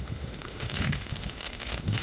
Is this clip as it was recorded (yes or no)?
no